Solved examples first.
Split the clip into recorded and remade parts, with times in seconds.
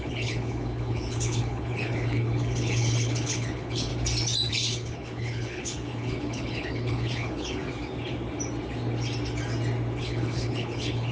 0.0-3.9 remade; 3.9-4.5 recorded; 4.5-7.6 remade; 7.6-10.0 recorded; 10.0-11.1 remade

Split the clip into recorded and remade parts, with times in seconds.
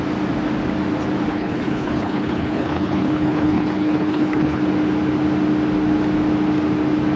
0.0-1.3 recorded; 1.3-4.6 remade; 4.6-7.2 recorded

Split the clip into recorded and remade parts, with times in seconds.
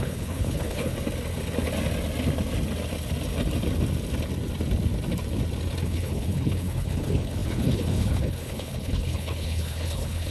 0.0-0.9 remade; 0.9-5.8 recorded; 5.8-10.3 remade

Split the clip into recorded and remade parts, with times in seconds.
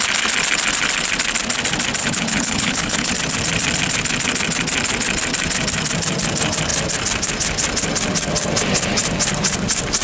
0.0-2.0 recorded; 2.0-3.1 remade; 3.1-10.0 recorded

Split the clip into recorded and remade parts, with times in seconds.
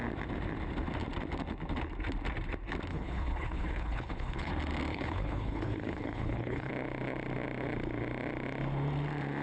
0.0-2.9 recorded; 2.9-4.5 remade; 4.5-4.9 recorded; 4.9-6.7 remade; 6.7-9.4 recorded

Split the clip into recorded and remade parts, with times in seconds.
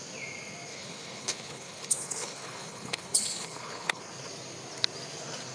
0.0-0.7 recorded; 0.7-4.0 remade; 4.0-5.5 recorded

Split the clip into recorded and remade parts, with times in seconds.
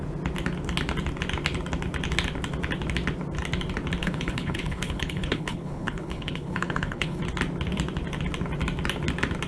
0.0-4.0 recorded; 4.0-7.2 remade; 7.2-9.5 recorded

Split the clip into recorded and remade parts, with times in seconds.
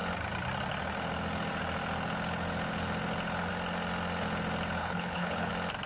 0.0-4.8 recorded; 4.8-5.5 remade; 5.5-5.9 recorded